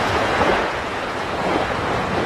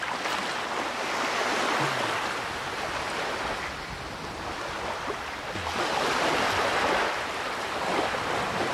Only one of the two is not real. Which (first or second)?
first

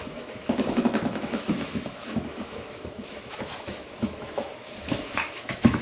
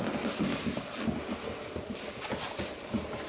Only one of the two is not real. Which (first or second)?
first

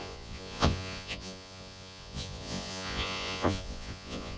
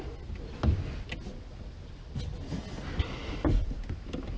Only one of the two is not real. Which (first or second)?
first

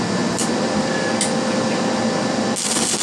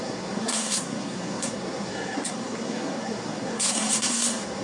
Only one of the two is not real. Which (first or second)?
second